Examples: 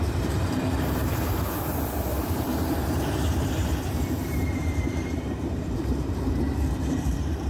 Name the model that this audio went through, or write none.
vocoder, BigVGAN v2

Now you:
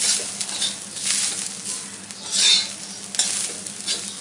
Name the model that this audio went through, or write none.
none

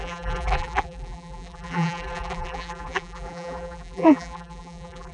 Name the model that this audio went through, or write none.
vocoder, BigVGAN v2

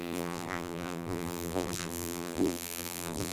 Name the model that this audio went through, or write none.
vocoder, BigVGAN v2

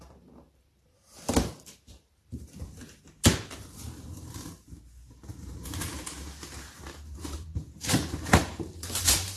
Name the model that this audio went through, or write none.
vocoder, BigVGAN v2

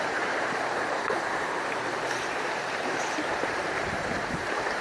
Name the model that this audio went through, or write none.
vocoder, BigVGAN v2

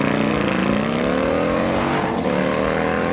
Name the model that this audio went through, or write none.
none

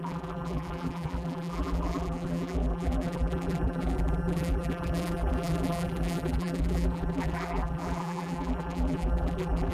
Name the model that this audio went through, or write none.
vocoder, BigVGAN v2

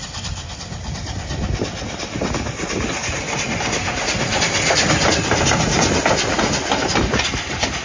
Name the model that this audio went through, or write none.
none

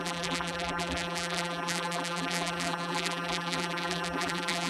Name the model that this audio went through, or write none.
vocoder, BigVGAN v2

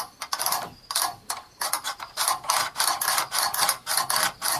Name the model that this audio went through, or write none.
vocoder, BigVGAN v2